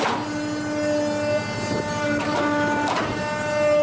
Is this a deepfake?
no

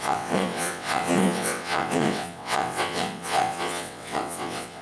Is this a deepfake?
yes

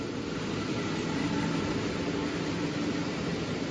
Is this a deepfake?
no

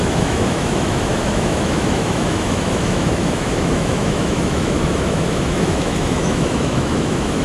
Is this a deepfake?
yes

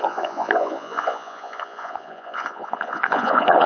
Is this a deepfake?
yes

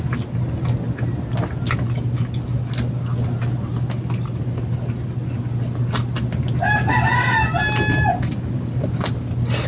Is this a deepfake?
no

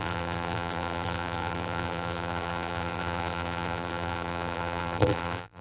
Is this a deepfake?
yes